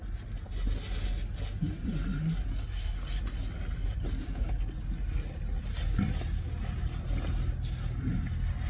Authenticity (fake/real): real